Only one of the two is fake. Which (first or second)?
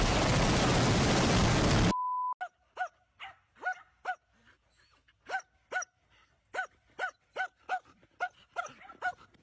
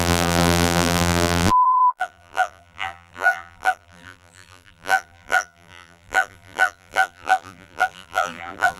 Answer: second